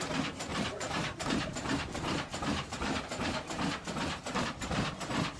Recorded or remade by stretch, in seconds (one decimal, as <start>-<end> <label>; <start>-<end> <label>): 0.0-0.5 recorded; 0.5-3.6 remade; 3.6-5.4 recorded